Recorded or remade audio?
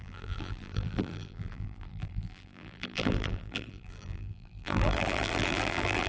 remade